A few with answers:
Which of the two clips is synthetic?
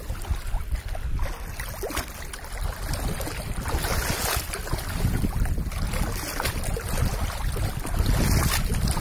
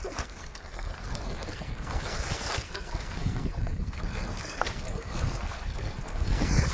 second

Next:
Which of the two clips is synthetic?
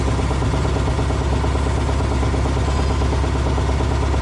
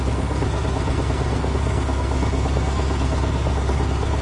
second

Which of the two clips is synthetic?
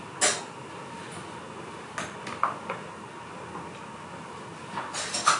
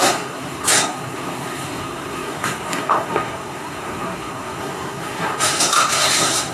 second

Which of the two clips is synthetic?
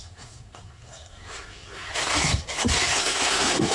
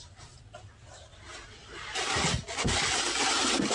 first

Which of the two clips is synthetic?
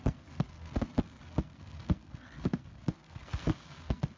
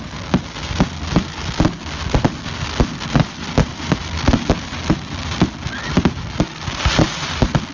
first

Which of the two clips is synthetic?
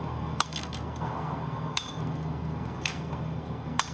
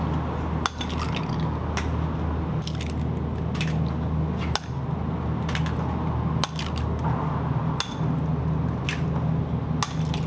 first